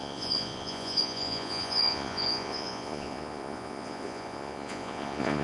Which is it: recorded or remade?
remade